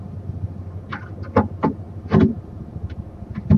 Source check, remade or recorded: recorded